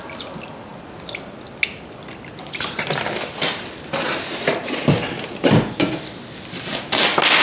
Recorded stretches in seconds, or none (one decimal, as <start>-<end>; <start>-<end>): 0.0-7.4